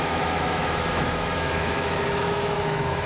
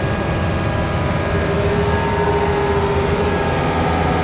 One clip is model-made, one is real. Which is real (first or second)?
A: second